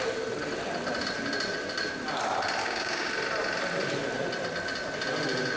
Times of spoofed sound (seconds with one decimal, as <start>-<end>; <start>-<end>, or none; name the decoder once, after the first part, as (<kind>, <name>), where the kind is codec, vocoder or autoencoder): 2.6-3.1 (codec, DAC)